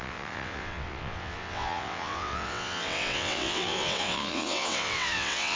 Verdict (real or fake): fake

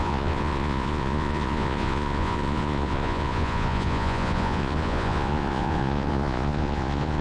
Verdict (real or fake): fake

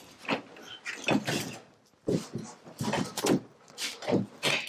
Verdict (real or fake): real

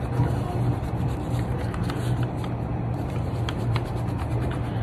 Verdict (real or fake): fake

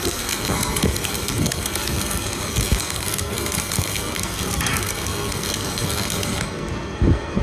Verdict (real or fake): fake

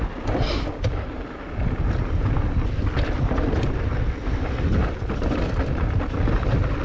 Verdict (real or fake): real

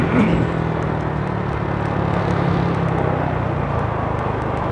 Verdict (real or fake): real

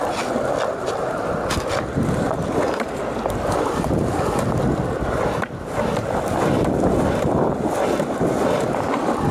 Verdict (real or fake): real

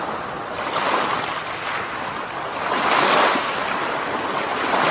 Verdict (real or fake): real